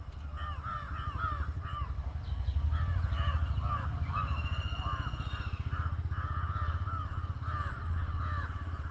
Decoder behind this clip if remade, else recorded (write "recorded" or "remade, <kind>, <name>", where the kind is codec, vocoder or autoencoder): recorded